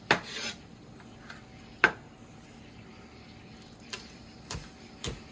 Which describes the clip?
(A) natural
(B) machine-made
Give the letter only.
A